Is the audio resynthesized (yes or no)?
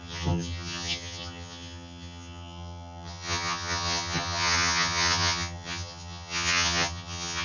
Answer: yes